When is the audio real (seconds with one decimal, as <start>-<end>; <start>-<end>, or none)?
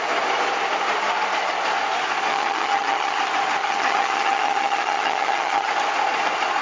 0.0-2.3; 3.2-3.6; 5.7-6.6